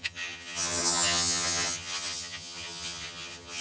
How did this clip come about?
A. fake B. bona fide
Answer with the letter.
A